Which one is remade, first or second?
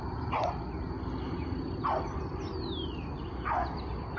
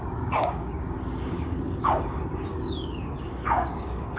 second